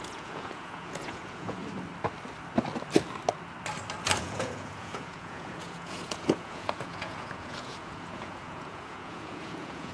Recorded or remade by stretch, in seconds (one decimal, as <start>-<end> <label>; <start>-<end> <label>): 0.0-1.6 remade; 1.6-4.2 recorded; 4.2-9.9 remade